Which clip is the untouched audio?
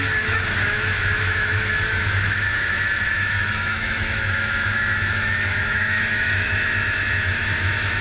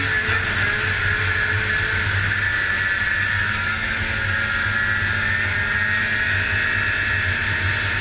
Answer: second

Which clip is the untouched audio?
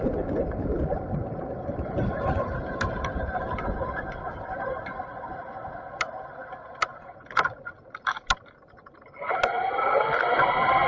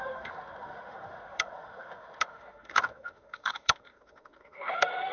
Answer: first